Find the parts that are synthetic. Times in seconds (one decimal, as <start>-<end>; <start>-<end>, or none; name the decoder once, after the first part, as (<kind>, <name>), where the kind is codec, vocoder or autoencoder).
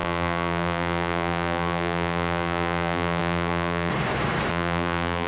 0.0-3.9 (vocoder, BigVGAN v2); 4.5-5.3